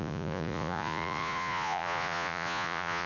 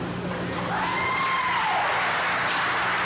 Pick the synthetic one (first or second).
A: first